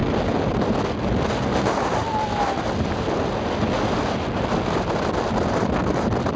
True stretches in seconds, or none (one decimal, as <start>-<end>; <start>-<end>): 0.0-6.4